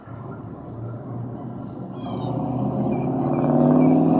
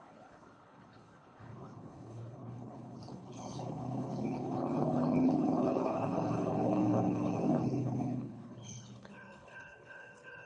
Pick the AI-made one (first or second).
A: second